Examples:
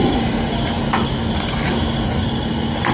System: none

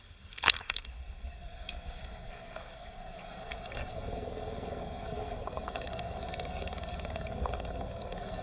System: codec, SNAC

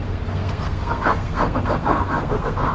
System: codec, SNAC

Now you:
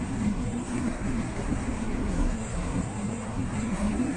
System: codec, SNAC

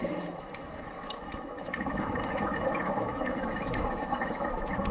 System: autoencoder, DAC-VAE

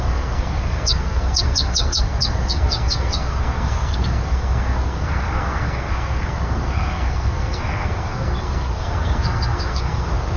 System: codec, SNAC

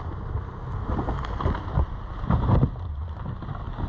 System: none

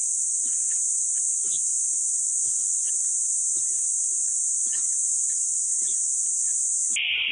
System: none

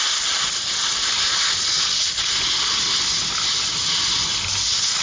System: none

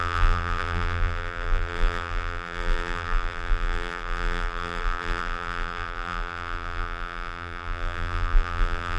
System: vocoder, BigVGAN v2